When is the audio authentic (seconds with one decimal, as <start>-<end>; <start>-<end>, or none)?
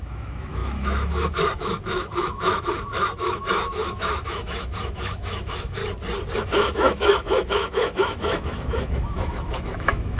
5.8-6.4